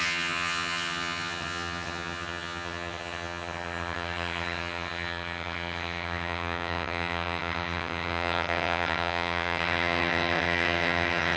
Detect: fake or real fake